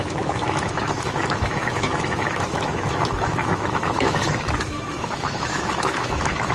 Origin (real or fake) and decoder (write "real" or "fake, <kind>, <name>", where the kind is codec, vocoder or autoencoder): fake, autoencoder, DAC-VAE